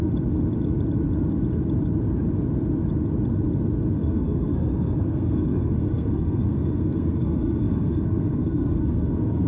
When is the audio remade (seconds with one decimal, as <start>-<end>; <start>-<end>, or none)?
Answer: 4.0-9.5